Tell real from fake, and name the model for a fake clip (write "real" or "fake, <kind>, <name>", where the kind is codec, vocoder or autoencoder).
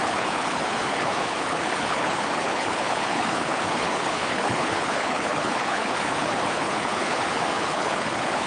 fake, codec, HILCodec